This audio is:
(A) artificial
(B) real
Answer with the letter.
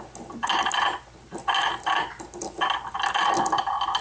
B